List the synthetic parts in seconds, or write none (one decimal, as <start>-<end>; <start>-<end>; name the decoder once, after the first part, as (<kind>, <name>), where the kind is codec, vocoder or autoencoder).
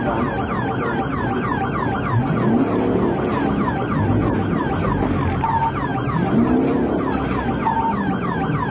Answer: none